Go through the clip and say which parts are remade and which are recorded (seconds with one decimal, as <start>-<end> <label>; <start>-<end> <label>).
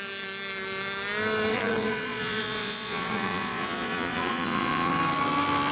0.0-1.5 recorded; 1.5-4.9 remade; 4.9-5.7 recorded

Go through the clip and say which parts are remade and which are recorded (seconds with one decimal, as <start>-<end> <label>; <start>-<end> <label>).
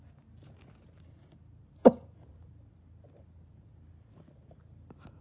0.0-5.2 recorded